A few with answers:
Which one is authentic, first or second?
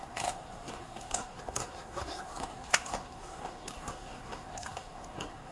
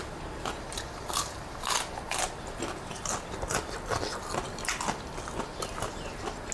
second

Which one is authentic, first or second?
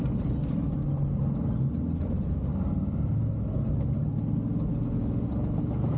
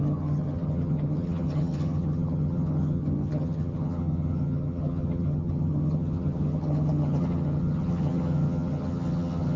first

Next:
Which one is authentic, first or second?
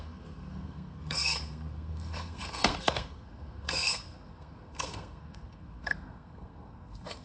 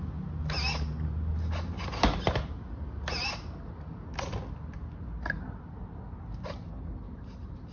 second